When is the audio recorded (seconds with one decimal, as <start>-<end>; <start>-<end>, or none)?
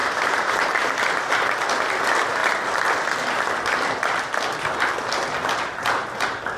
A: 1.1-6.6